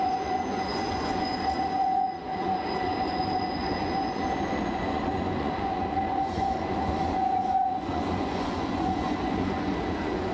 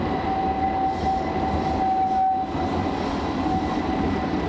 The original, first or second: second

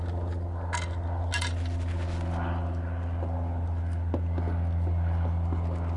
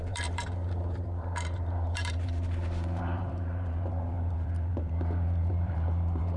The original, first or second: first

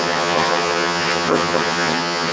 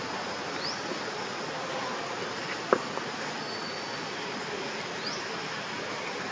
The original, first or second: second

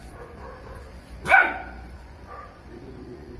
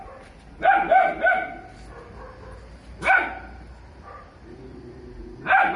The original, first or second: second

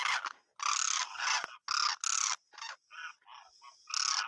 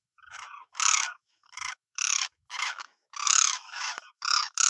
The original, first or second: first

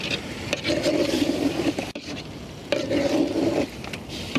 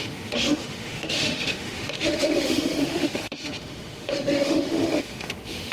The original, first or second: first